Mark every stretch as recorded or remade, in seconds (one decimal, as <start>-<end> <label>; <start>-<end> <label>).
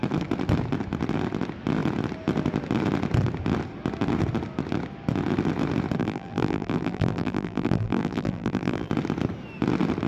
0.0-6.0 recorded; 6.0-8.9 remade; 8.9-10.1 recorded